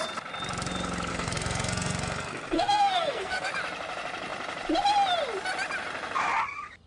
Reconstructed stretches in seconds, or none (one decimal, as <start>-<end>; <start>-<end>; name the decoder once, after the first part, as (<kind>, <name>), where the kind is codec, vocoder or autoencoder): 1.1-3.5 (codec, SNAC)